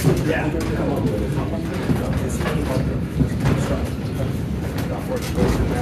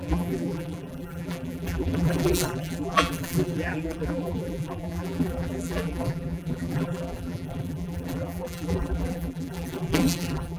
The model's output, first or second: second